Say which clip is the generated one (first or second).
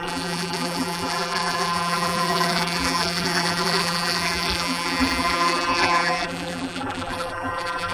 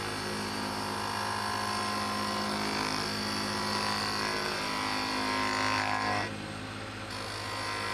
first